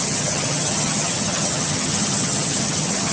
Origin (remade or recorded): remade